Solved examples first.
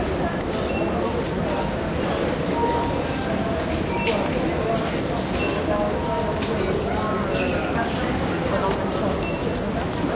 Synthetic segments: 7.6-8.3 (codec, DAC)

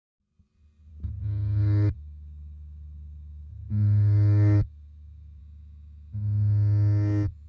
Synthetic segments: 0.9-5.4 (codec, DAC)

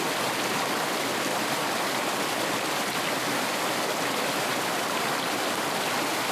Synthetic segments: none

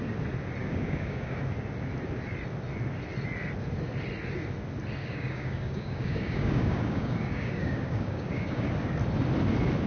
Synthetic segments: 0.6-1.4 (codec, DAC); 5.0-8.7

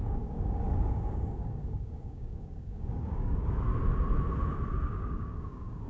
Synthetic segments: 0.0-3.7 (codec, DAC); 4.9-5.9